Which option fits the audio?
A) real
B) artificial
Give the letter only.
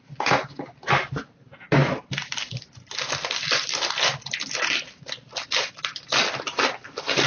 A